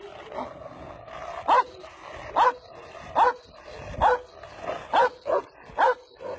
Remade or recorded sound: recorded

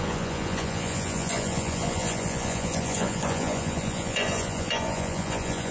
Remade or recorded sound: remade